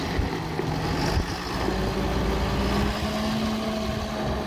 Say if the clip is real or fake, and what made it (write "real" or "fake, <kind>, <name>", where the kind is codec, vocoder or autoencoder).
real